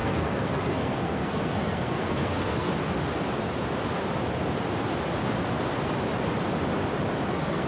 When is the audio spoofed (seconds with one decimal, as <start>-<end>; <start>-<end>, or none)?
0.0-2.7; 7.3-7.7